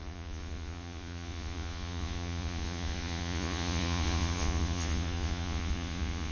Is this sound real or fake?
fake